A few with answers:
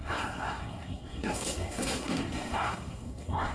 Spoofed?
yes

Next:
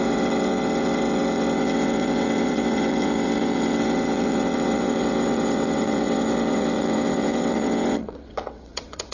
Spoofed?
yes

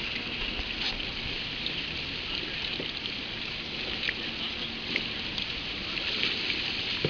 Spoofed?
no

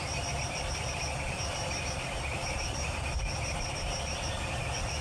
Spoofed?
yes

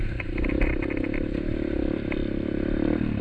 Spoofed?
no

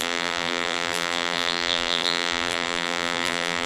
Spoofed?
yes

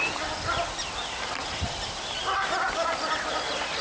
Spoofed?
no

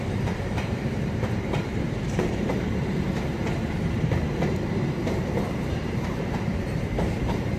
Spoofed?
yes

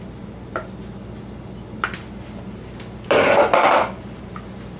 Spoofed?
no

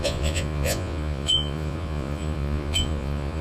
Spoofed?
yes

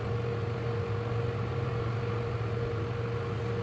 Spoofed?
no